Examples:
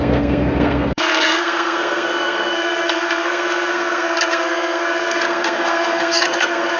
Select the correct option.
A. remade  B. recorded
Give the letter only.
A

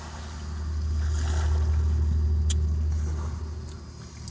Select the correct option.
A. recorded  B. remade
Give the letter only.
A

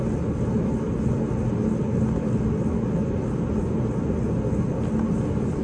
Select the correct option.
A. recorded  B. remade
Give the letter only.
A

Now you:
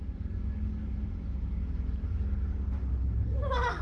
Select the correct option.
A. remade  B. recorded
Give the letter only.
A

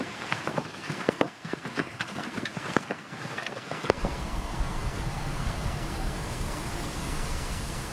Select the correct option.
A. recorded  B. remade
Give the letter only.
B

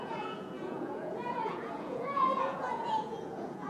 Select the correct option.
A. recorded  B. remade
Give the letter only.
B